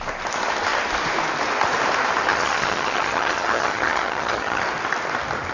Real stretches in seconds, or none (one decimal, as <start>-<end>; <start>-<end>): 0.0-2.3; 4.6-5.5